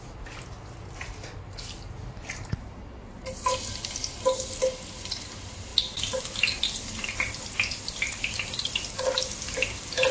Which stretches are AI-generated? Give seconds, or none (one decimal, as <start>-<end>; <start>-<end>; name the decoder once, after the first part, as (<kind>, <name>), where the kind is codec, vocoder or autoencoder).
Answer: none